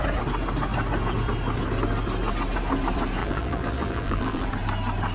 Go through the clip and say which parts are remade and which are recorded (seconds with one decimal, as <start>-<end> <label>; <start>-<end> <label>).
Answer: 0.0-3.2 recorded; 3.2-4.5 remade; 4.5-5.1 recorded